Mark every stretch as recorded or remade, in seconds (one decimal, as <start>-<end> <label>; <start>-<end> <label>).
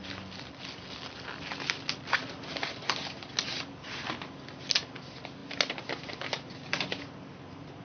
0.0-7.8 recorded